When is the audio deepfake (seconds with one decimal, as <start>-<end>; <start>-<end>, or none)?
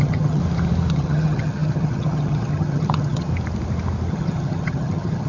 0.0-0.4; 0.9-3.3; 4.1-5.3